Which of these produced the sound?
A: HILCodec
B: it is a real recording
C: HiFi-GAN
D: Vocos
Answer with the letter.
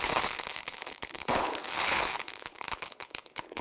A